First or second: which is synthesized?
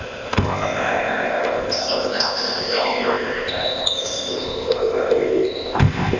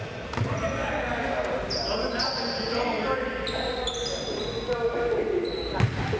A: first